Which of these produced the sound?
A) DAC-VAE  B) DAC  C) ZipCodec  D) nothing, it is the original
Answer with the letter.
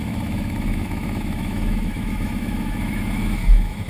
A